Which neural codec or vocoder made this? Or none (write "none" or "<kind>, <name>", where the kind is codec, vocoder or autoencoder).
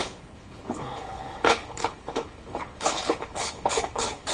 codec, HILCodec